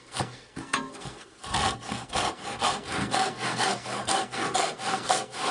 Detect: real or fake fake